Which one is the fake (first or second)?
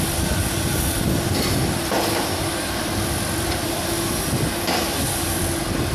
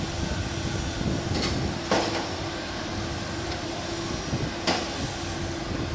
first